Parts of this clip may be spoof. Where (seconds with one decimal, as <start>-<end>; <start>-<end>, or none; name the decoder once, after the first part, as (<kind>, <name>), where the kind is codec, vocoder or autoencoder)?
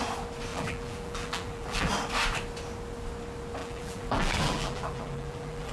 0.5-1.9 (vocoder, BigVGAN v2); 3.6-5.7